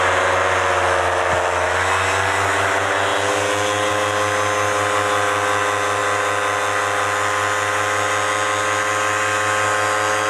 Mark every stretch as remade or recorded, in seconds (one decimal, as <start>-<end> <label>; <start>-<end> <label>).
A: 0.0-10.3 recorded